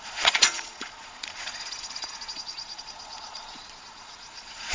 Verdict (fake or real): fake